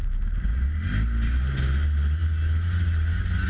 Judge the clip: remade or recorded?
recorded